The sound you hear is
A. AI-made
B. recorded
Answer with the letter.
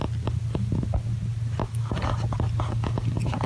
B